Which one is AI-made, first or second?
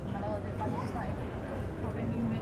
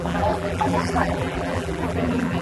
second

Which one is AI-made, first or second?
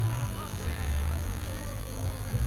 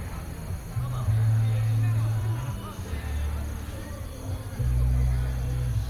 first